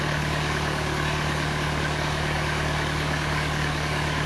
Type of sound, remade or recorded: remade